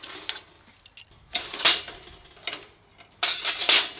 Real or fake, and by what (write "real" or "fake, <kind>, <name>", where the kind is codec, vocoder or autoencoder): real